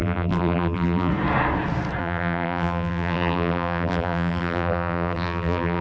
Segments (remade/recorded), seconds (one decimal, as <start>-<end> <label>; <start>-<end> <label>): 0.0-1.1 remade; 1.1-2.0 recorded; 2.0-5.8 remade